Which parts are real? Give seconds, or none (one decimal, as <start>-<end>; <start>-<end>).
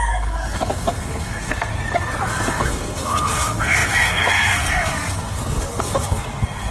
1.7-2.3